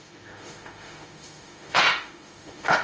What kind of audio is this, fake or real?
fake